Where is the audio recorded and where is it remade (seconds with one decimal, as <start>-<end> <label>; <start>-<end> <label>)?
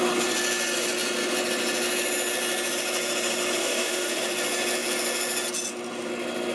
0.0-3.6 recorded; 3.6-4.2 remade; 4.2-6.5 recorded